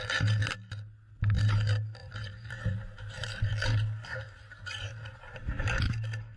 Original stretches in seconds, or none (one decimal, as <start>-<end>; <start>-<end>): 0.0-2.0; 5.8-6.4